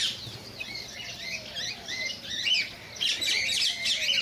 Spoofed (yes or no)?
no